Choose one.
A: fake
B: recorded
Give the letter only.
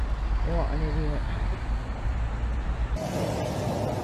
B